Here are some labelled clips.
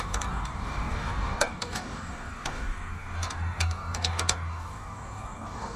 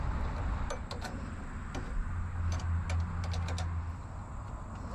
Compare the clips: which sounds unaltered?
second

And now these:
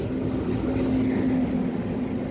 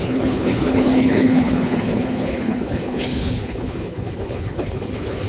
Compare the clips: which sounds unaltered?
first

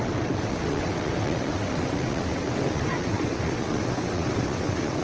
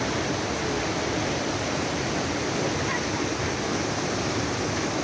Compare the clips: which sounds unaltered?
second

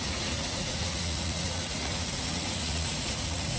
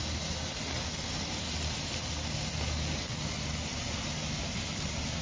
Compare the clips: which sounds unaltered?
second